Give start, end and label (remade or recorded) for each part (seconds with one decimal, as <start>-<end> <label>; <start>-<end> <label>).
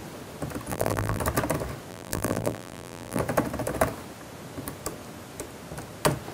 0.0-0.7 recorded; 0.7-1.2 remade; 1.2-1.9 recorded; 1.9-3.2 remade; 3.2-6.3 recorded